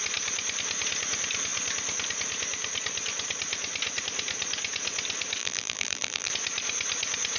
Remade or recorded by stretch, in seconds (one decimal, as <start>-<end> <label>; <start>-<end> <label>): 0.0-5.4 recorded; 5.4-6.3 remade; 6.3-7.4 recorded